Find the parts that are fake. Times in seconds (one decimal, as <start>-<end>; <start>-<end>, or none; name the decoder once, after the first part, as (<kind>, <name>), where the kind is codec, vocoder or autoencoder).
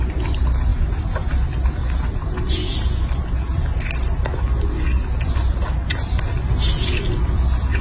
none